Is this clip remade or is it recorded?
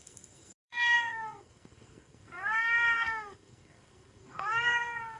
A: remade